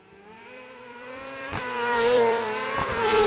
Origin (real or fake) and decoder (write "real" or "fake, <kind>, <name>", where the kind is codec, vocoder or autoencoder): fake, vocoder, BigVGAN v2